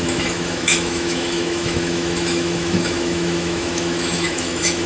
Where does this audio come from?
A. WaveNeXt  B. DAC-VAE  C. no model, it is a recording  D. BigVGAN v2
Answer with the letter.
B